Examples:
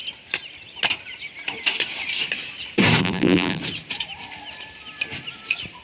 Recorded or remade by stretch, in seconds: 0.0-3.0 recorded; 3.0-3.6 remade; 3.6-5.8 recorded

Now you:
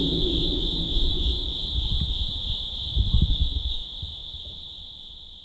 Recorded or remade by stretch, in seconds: 0.0-3.2 remade; 3.2-4.2 recorded; 4.2-4.8 remade; 4.8-5.4 recorded

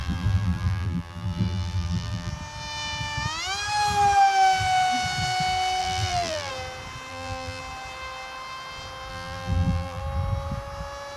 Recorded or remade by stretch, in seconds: 0.0-2.3 remade; 2.3-5.8 recorded; 5.8-6.5 remade; 6.5-7.1 recorded; 7.1-7.6 remade; 7.6-9.1 recorded; 9.1-10.0 remade; 10.0-11.2 recorded

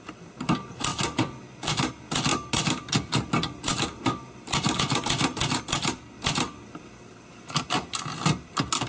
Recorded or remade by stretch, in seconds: 0.0-8.9 recorded

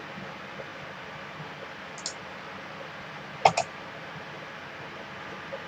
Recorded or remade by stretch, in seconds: 0.0-5.7 recorded